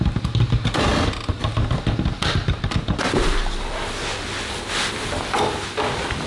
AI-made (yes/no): no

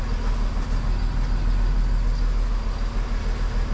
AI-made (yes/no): no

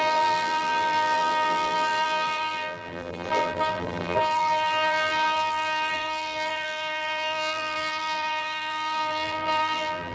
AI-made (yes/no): yes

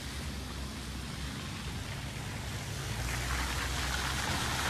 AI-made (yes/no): no